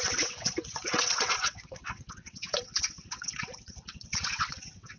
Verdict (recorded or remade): remade